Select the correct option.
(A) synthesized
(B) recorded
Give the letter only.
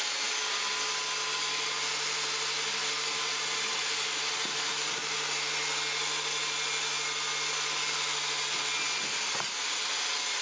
B